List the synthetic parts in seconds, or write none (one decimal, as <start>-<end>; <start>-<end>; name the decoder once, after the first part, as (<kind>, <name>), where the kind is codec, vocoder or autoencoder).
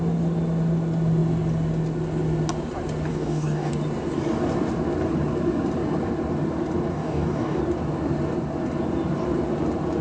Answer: 3.1-3.7 (codec, DAC); 6.9-7.6